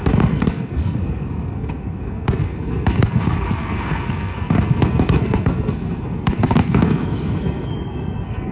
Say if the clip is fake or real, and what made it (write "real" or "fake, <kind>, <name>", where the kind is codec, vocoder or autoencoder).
fake, codec, SNAC